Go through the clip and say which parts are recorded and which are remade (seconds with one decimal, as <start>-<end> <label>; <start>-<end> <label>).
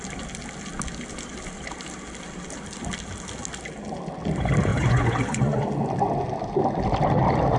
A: 0.0-4.7 recorded; 4.7-5.7 remade; 5.7-7.6 recorded